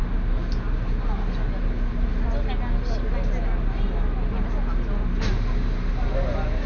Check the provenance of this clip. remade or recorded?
recorded